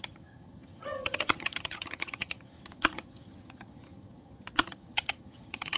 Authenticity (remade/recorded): remade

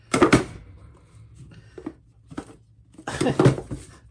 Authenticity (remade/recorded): recorded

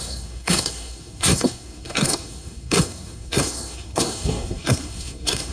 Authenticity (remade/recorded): remade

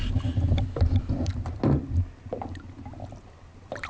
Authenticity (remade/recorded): recorded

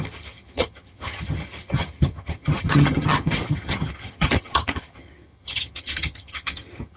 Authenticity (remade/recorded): remade